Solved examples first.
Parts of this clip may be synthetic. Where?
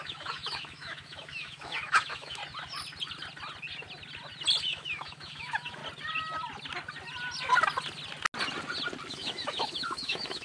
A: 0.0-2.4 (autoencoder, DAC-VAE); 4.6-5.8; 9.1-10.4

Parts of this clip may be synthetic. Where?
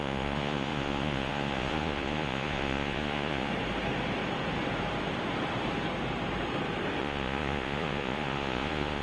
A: 0.0-3.5 (vocoder, Vocos); 7.0-9.0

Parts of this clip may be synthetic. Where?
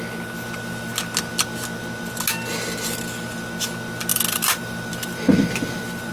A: 4.1-6.1 (vocoder, BigVGAN v2)